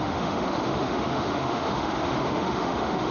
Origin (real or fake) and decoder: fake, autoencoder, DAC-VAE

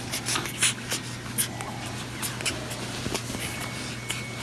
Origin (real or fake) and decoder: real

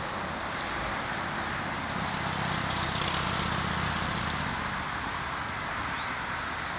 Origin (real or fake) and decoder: real